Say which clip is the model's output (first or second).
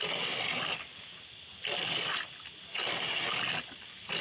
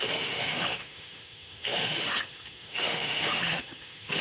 second